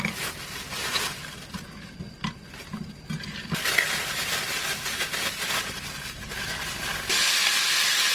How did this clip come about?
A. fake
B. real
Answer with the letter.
B